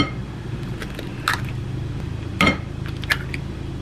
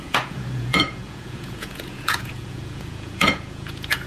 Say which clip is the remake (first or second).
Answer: second